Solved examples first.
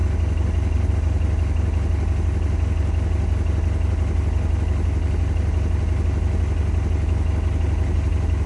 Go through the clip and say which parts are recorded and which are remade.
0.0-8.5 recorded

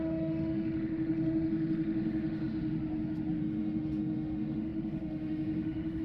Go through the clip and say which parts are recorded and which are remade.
0.0-2.5 remade; 2.5-3.4 recorded; 3.4-6.0 remade

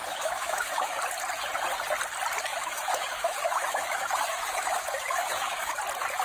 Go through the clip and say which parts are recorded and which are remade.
0.0-1.0 remade; 1.0-2.5 recorded; 2.5-5.8 remade; 5.8-6.2 recorded

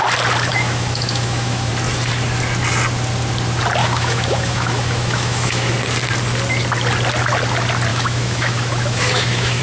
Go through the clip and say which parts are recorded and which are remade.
0.0-0.5 recorded; 0.5-1.7 remade; 1.7-3.8 recorded; 3.8-5.7 remade; 5.7-7.9 recorded; 7.9-9.6 remade

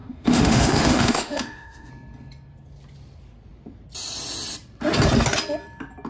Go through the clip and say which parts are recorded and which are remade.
0.0-1.9 remade; 1.9-6.1 recorded